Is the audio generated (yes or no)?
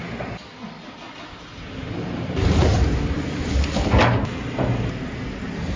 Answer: no